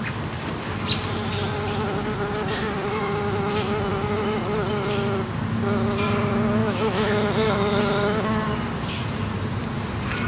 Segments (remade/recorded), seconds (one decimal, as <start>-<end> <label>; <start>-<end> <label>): 0.0-6.6 recorded; 6.6-7.8 remade; 7.8-10.3 recorded